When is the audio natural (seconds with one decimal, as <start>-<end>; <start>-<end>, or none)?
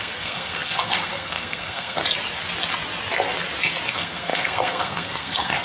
2.0-3.9